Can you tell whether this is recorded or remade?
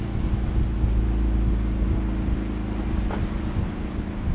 recorded